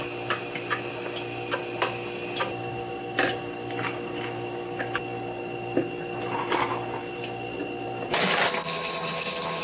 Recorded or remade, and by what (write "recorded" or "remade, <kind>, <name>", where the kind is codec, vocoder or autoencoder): recorded